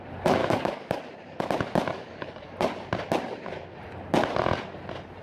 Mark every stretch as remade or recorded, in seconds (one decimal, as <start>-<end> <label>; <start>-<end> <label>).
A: 0.0-0.4 recorded; 0.4-1.0 remade; 1.0-2.0 recorded; 2.0-2.5 remade; 2.5-5.2 recorded